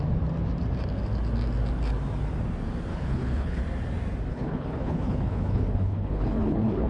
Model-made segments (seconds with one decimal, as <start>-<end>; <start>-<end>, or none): 2.9-3.6; 4.3-6.9